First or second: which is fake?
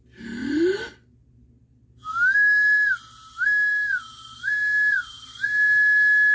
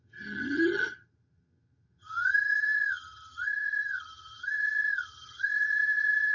second